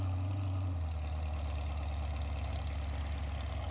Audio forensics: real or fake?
real